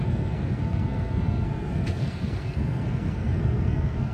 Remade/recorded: remade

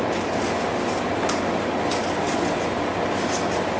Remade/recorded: recorded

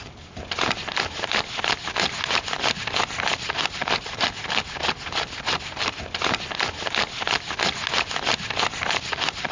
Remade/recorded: recorded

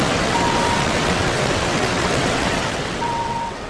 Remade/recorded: remade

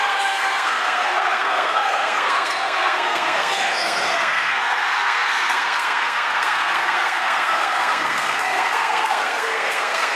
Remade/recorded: remade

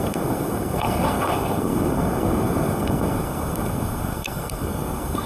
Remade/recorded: remade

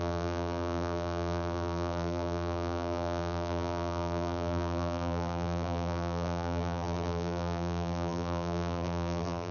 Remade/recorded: remade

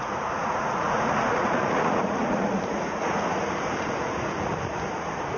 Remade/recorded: remade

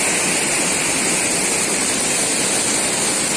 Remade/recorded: recorded